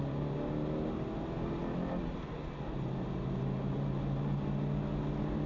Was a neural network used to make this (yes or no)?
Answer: no